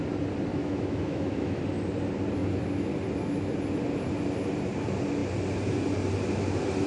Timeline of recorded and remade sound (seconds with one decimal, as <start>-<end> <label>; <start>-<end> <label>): 0.0-0.5 recorded; 0.5-1.6 remade; 1.6-6.9 recorded